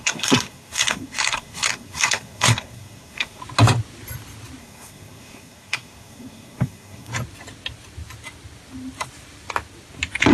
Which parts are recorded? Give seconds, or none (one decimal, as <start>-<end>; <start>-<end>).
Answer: 3.4-4.6; 7.1-10.3